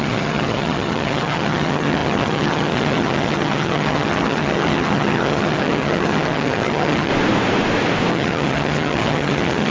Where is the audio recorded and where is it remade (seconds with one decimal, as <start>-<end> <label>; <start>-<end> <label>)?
0.0-7.1 remade; 7.1-8.1 recorded; 8.1-9.7 remade